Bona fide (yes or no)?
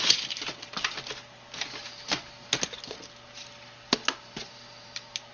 yes